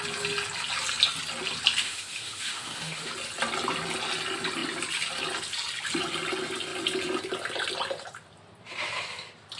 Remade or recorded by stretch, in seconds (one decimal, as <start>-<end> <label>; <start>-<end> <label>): 0.0-1.8 recorded; 1.8-3.1 remade; 3.1-9.6 recorded